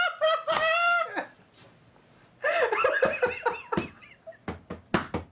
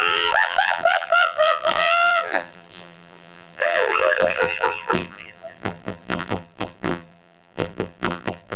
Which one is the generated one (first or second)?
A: second